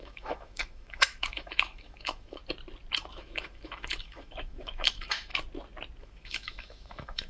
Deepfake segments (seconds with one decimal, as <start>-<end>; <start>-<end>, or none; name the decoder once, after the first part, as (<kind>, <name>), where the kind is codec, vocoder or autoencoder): 0.0-2.4 (autoencoder, DAC-VAE); 3.1-5.3; 6.0-7.3